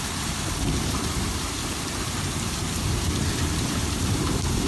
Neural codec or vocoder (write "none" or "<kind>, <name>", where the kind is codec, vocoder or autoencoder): vocoder, BigVGAN v2